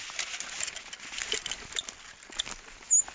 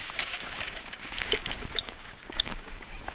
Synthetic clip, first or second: second